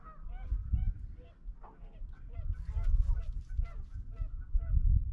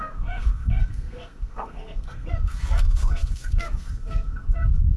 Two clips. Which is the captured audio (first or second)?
first